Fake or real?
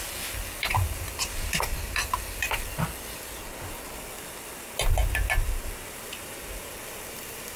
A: real